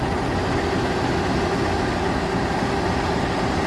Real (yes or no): yes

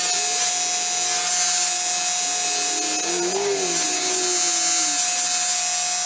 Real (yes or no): yes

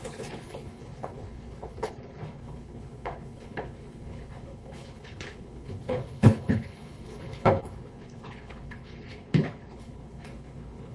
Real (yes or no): no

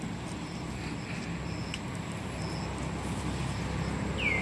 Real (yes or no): yes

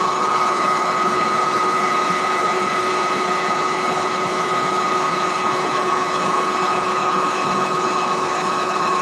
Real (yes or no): no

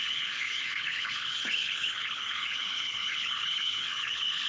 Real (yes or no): no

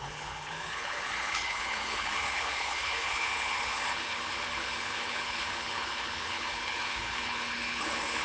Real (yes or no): no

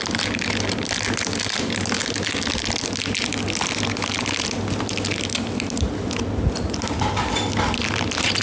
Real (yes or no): yes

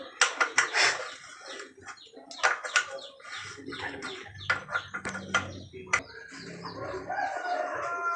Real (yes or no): yes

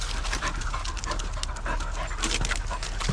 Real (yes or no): yes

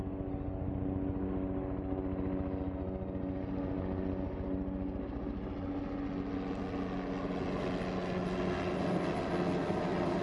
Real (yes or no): yes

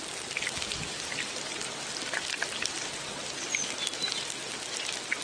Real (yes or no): yes